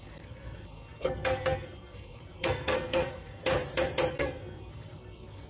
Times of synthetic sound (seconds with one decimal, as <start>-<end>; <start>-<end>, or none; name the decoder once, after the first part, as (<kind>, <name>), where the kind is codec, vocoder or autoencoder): 0.0-3.4 (codec, SNAC); 4.1-5.5